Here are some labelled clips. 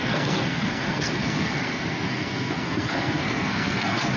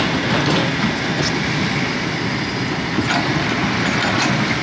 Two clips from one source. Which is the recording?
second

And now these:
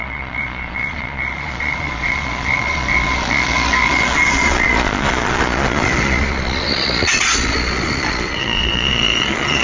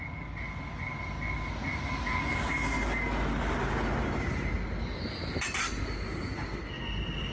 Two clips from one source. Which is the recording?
second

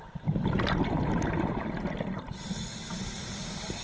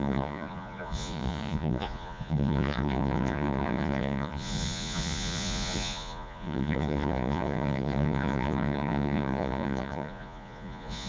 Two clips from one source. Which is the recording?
first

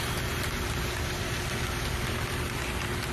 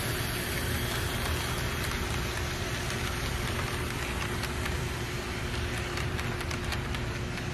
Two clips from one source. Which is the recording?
second